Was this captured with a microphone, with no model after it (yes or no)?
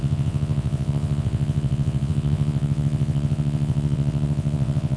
no